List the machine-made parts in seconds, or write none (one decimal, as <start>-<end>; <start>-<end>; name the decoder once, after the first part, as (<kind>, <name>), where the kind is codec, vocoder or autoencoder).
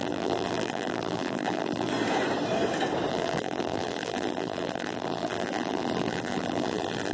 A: 0.0-1.9 (vocoder, BigVGAN v2); 3.1-7.1